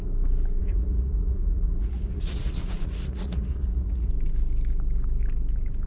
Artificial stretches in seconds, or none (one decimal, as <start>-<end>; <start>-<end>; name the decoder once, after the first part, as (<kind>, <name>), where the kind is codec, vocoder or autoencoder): 0.6-4.1 (vocoder, Vocos)